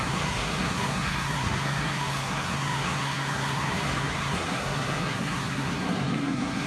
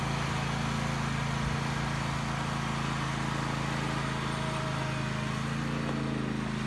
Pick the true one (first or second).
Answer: second